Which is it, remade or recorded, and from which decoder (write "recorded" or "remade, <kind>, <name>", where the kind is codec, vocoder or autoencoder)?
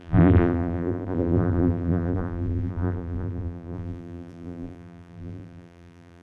remade, vocoder, BigVGAN v2